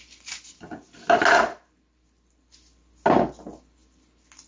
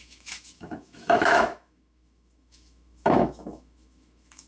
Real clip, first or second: first